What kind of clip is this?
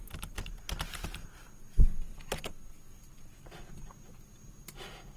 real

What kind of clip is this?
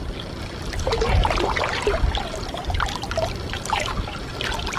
real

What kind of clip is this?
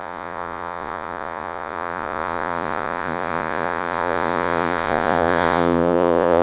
fake